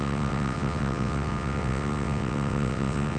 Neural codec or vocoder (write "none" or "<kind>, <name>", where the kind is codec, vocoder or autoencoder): vocoder, WaveNeXt